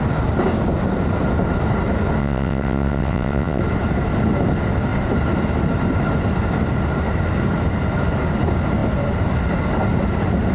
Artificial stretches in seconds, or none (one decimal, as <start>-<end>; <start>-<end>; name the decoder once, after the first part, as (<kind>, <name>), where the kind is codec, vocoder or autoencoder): 2.2-3.6 (vocoder, WaveNeXt)